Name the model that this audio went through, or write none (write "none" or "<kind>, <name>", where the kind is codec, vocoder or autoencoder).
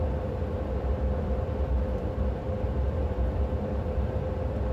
vocoder, BigVGAN v2